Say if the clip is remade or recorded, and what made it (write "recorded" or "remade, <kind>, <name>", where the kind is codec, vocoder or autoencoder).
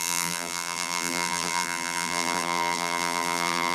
remade, vocoder, BigVGAN v2